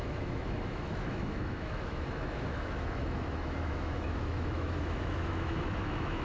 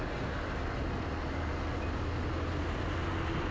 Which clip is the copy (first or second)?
first